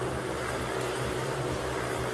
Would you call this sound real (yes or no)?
yes